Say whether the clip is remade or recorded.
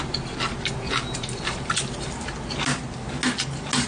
recorded